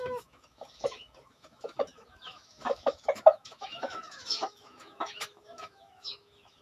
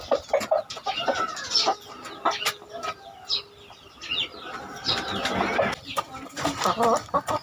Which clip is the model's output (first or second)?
first